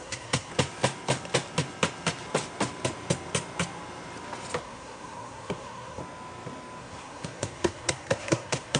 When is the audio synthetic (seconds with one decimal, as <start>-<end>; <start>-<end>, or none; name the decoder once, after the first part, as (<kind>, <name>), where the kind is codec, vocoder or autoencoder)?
0.0-0.5 (codec, SNAC); 4.6-6.0; 6.8-8.8